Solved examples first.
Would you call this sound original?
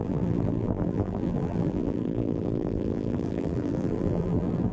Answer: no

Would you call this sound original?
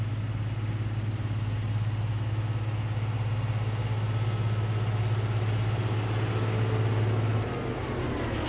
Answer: yes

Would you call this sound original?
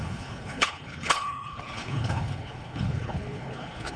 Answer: no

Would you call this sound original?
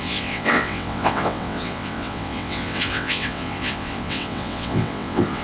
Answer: no